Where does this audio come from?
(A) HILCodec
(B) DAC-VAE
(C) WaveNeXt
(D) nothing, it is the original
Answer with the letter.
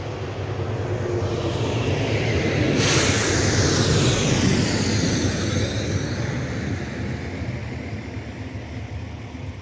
D